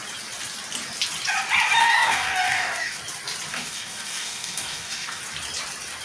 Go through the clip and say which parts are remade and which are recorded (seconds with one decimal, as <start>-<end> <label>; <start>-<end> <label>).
0.0-1.8 recorded; 1.8-3.0 remade; 3.0-3.5 recorded; 3.5-5.2 remade; 5.2-6.0 recorded